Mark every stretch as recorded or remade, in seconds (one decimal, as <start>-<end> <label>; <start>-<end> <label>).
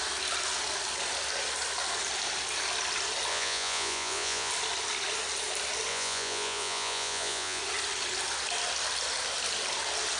0.0-3.3 recorded; 3.3-4.5 remade; 4.5-5.9 recorded; 5.9-7.6 remade; 7.6-10.2 recorded